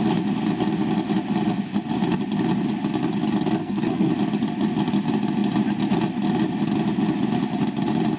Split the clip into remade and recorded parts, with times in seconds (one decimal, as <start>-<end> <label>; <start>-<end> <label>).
0.0-3.6 recorded; 3.6-4.1 remade; 4.1-8.2 recorded